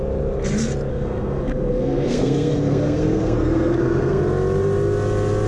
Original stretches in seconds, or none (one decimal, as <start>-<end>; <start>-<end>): 0.0-0.9; 4.2-5.5